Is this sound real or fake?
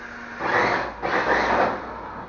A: real